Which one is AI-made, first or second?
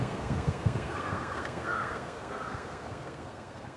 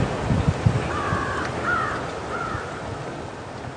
first